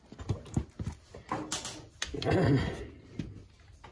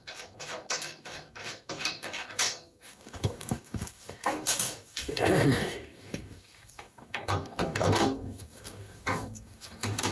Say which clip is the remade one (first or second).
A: second